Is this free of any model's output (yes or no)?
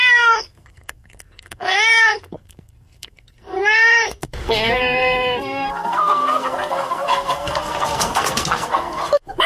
no